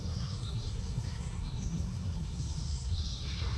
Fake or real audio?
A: fake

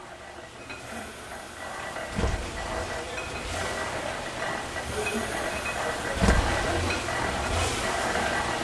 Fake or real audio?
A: real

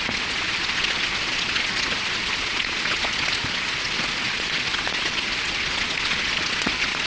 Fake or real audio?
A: fake